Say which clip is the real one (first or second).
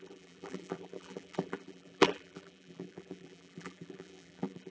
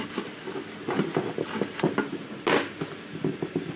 second